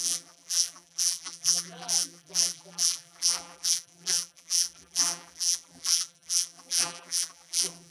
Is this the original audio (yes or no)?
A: no